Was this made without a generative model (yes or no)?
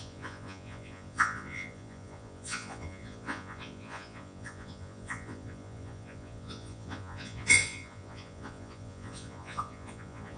no